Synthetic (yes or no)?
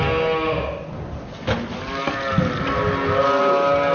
no